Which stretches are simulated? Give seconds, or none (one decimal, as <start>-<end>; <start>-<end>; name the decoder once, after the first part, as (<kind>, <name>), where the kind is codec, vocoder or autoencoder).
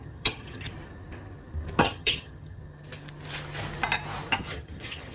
0.0-0.7 (vocoder, HiFi-GAN); 1.8-2.6; 4.4-5.1